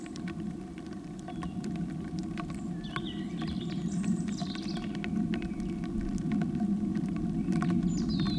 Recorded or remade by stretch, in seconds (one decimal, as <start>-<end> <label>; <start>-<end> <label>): 0.0-4.4 remade; 4.4-6.6 recorded; 6.6-8.4 remade